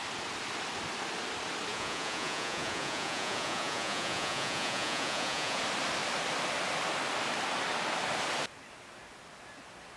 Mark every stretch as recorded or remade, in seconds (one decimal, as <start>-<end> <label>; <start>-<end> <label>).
0.0-1.7 recorded; 1.7-5.6 remade; 5.6-10.0 recorded